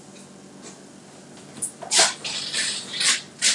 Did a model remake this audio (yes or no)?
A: no